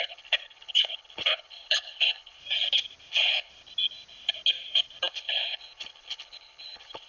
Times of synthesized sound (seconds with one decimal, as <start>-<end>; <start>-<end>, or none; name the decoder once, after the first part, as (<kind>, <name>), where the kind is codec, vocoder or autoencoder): 0.0-2.4 (codec, HILCodec); 3.1-3.5; 5.1-7.1

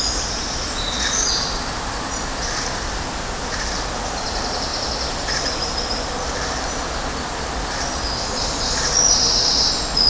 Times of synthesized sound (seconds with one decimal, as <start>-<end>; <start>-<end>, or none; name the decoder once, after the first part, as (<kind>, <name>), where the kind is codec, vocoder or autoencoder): none